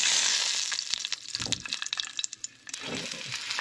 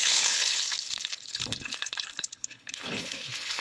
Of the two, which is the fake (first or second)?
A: second